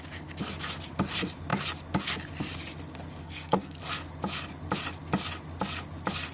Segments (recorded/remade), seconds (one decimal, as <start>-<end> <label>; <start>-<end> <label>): 0.0-3.2 recorded; 3.2-3.8 remade; 3.8-6.3 recorded